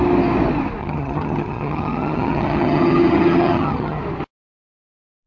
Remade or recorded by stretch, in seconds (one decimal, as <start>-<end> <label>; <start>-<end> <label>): 0.0-0.8 recorded; 0.8-4.0 remade; 4.0-5.3 recorded